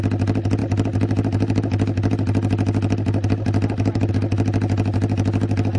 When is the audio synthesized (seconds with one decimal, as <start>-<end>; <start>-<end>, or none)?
none